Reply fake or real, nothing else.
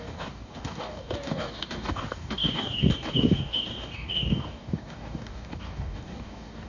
fake